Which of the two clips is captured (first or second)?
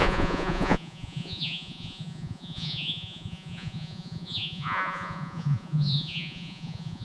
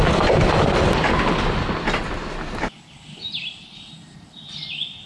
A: second